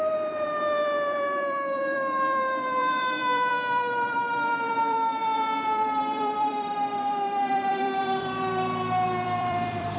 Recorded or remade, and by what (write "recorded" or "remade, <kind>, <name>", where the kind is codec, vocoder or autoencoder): remade, vocoder, BigVGAN v2